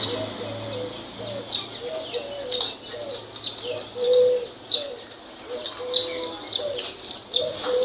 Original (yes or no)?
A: yes